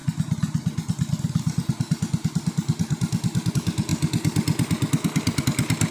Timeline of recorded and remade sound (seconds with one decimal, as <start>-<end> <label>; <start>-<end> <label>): 0.0-5.9 recorded